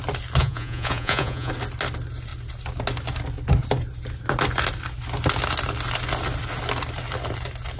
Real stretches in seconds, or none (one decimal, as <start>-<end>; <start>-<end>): 0.0-0.4; 1.5-7.8